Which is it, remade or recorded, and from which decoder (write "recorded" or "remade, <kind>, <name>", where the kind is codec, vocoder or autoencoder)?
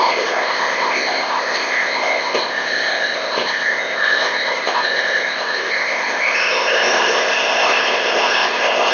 remade, codec, ZipCodec